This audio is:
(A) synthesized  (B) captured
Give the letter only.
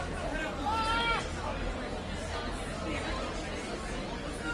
B